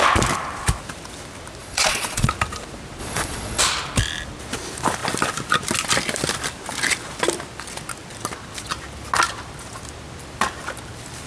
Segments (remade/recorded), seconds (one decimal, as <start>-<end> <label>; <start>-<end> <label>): 0.0-1.6 recorded; 1.6-2.3 remade; 2.3-3.0 recorded; 3.0-3.6 remade; 3.6-11.3 recorded